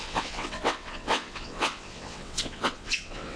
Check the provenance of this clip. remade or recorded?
remade